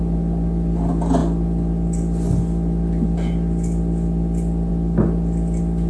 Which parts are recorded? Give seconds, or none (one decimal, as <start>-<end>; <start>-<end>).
0.0-5.9